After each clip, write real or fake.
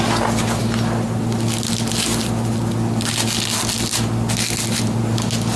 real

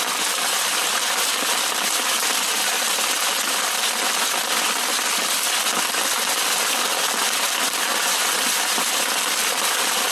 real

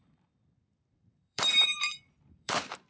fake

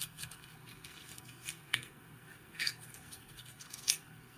fake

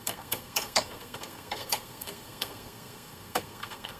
fake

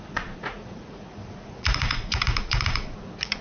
fake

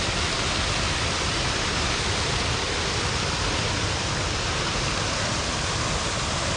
real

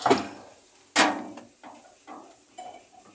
real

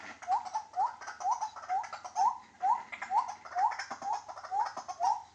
real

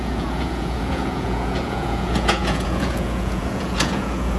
fake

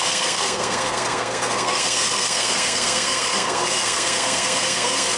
fake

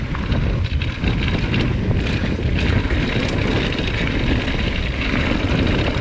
real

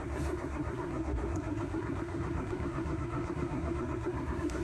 fake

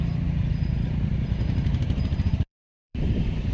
fake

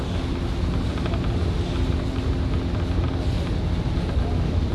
real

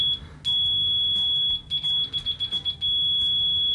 real